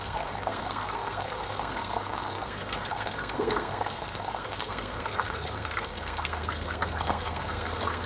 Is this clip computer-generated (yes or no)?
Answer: yes